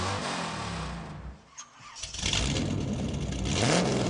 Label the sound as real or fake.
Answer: real